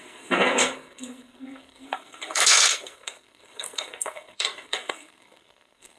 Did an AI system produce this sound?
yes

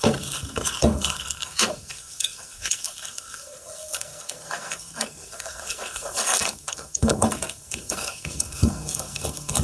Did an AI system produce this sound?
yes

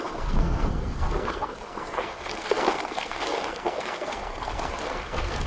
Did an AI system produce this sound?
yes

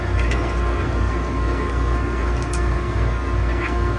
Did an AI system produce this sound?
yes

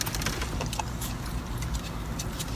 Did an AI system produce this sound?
no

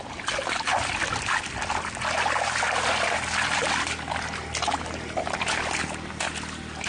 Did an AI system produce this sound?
no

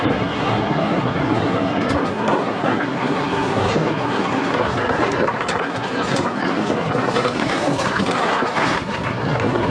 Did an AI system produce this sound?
yes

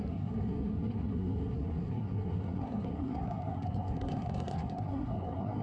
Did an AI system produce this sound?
yes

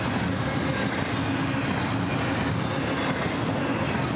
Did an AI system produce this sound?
no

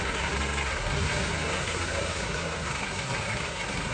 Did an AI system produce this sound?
yes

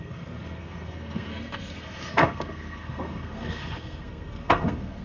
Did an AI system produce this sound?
yes